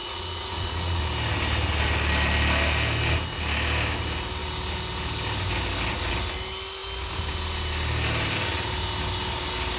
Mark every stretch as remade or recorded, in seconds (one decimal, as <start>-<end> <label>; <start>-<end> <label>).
0.0-1.0 remade; 1.0-9.8 recorded